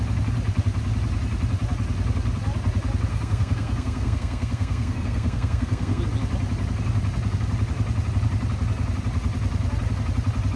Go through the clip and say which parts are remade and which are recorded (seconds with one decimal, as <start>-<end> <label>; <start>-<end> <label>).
0.0-3.1 recorded; 3.1-6.0 remade; 6.0-10.6 recorded